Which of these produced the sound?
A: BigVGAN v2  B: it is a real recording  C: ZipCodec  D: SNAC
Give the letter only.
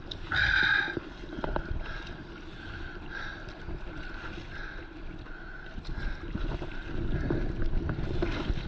B